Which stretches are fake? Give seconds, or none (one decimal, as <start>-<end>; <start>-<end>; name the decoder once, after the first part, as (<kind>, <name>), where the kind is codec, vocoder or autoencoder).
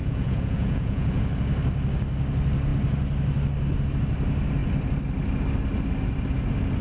0.0-1.2 (vocoder, Vocos)